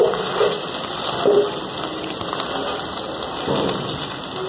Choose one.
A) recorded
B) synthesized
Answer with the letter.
A